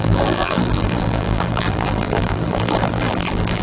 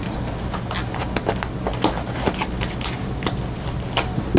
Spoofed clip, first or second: first